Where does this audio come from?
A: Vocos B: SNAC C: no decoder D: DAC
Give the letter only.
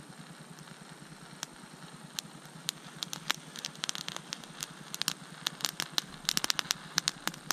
C